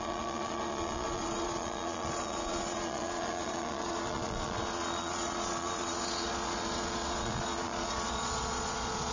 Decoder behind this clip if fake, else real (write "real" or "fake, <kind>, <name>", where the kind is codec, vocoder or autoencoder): fake, vocoder, Vocos